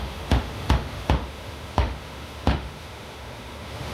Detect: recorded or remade remade